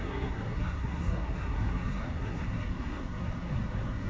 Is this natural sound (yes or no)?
no